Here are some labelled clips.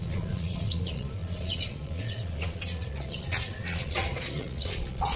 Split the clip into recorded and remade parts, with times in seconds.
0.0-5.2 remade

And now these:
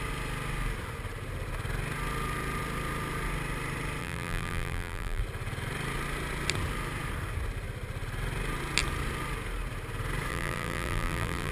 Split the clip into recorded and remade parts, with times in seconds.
0.0-4.0 recorded; 4.0-5.2 remade; 5.2-10.3 recorded; 10.3-11.5 remade

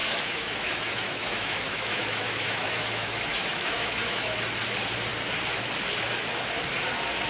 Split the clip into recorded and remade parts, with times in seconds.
0.0-4.4 remade; 4.4-7.3 recorded

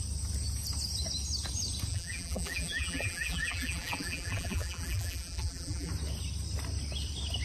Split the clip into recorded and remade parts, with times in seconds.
0.0-1.9 recorded; 1.9-5.9 remade; 5.9-7.4 recorded

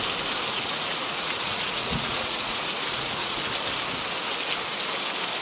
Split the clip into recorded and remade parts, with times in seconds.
0.0-0.5 recorded; 0.5-3.5 remade; 3.5-5.4 recorded

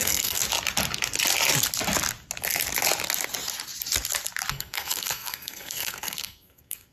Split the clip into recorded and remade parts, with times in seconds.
0.0-0.4 remade; 0.4-4.5 recorded; 4.5-6.9 remade